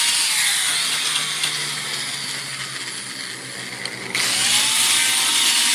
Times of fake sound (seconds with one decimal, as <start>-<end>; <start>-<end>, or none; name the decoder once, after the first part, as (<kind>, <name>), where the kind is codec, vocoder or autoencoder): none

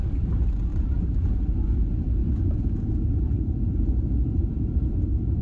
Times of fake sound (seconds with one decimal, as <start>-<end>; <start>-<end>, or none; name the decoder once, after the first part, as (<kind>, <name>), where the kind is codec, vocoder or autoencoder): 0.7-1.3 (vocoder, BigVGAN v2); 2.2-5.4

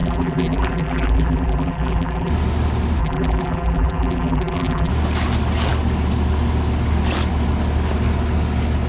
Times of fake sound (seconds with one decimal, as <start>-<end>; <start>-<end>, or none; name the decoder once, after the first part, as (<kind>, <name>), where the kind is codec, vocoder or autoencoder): 0.0-2.3 (vocoder, BigVGAN v2); 3.0-4.9

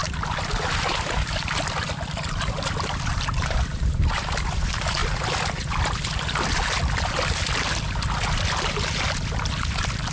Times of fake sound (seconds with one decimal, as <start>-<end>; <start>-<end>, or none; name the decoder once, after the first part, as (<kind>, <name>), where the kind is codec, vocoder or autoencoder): 3.1-4.1 (vocoder, BigVGAN v2)

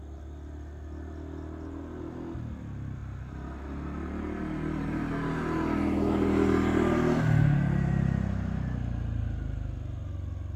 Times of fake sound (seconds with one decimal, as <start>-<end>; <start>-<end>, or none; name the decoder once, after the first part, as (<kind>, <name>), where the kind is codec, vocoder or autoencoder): none

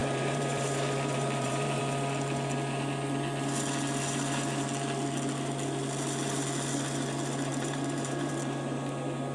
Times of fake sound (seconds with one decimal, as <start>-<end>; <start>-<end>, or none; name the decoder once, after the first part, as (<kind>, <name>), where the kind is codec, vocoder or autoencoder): 0.0-1.8 (vocoder, BigVGAN v2); 7.5-8.3

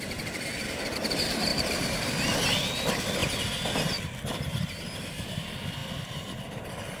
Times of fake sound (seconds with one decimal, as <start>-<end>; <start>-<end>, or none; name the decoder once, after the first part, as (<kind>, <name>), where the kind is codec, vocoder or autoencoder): 1.5-2.1 (vocoder, BigVGAN v2)

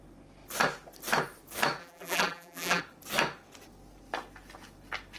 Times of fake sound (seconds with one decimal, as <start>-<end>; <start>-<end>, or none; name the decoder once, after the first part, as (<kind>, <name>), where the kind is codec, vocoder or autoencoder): 1.8-2.8 (vocoder, BigVGAN v2)